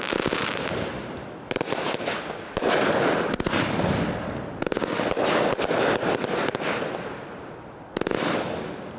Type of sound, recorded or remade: recorded